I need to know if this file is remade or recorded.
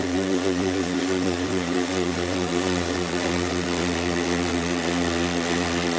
remade